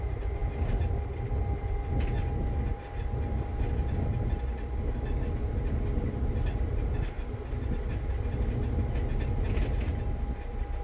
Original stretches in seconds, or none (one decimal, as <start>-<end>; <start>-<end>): 0.0-10.8